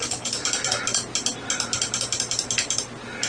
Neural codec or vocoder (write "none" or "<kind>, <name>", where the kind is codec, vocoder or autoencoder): none